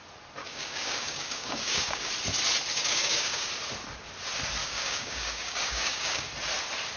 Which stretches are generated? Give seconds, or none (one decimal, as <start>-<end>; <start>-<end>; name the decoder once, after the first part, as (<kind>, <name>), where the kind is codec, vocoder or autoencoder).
0.4-2.1 (codec, DAC); 2.7-3.5; 4.6-6.3